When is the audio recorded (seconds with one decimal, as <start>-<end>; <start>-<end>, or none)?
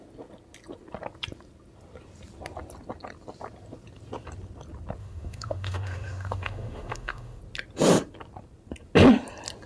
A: 0.0-5.0; 7.4-9.7